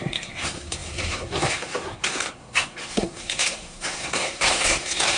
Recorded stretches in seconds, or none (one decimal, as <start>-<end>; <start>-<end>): none